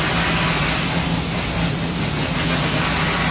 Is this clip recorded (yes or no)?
yes